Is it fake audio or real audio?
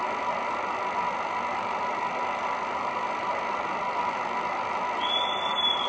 real